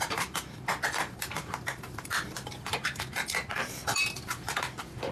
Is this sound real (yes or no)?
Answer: no